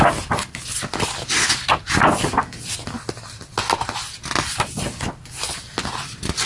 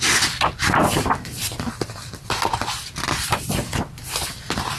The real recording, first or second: first